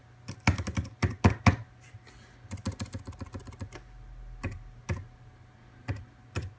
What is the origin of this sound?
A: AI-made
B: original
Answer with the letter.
B